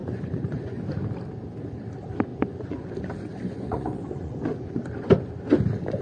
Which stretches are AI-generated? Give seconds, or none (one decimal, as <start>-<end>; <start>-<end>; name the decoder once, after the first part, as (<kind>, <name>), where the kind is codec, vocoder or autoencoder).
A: 0.0-0.8 (vocoder, Vocos); 2.3-2.9; 3.4-4.4